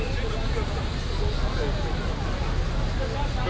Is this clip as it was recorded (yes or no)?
yes